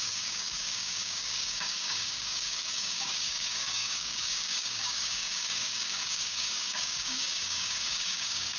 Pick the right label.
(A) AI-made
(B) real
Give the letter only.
A